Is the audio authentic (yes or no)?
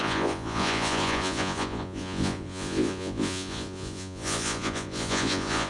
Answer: no